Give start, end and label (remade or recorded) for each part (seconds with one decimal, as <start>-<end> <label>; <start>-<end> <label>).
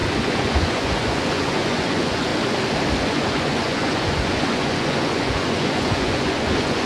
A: 0.0-2.3 remade; 2.3-3.0 recorded; 3.0-6.9 remade